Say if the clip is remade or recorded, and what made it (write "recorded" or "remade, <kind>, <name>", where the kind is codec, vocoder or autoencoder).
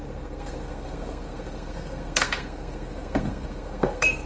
remade, codec, SNAC